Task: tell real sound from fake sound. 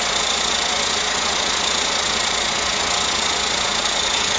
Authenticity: fake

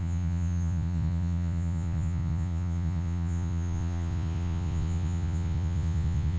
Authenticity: fake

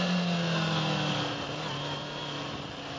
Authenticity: real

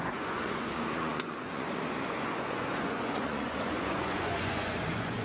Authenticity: fake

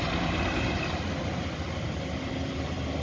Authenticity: real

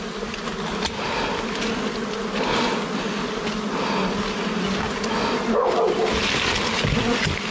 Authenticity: real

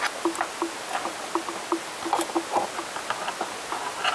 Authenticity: real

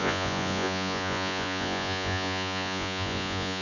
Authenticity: fake